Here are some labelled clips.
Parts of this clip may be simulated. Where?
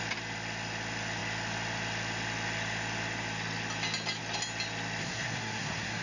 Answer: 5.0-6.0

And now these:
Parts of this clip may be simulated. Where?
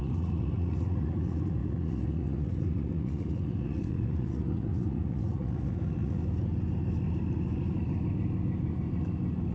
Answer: 0.0-6.2